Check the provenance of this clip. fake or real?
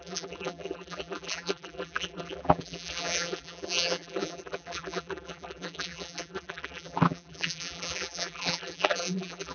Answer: fake